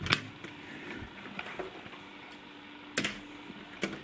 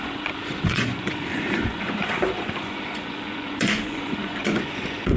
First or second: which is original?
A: first